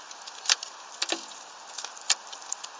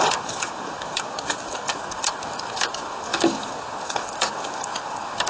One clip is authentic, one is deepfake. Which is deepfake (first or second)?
second